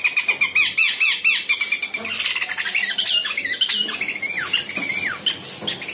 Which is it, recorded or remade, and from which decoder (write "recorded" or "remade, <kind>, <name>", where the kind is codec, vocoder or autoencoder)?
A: recorded